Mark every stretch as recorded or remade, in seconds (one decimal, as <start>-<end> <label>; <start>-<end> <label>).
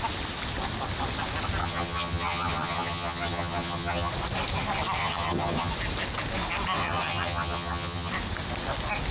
0.0-1.6 recorded; 1.6-4.1 remade; 4.1-5.0 recorded; 5.0-5.7 remade; 5.7-6.8 recorded; 6.8-8.1 remade; 8.1-9.1 recorded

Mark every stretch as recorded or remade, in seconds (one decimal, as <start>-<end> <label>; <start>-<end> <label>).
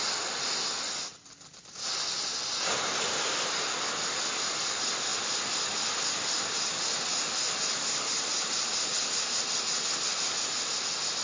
0.0-11.2 recorded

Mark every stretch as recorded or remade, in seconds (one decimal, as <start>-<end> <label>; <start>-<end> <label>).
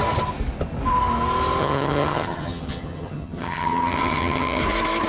0.0-1.6 recorded; 1.6-4.6 remade; 4.6-5.1 recorded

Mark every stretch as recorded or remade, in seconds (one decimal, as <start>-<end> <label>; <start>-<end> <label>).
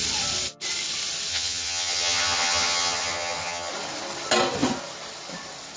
0.0-1.3 recorded; 1.3-3.7 remade; 3.7-5.8 recorded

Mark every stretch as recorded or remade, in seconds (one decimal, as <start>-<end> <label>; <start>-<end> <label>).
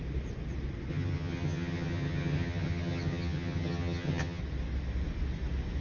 0.0-0.9 recorded; 0.9-4.4 remade; 4.4-5.8 recorded